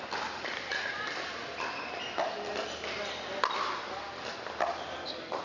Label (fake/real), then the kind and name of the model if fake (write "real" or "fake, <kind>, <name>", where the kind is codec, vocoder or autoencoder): real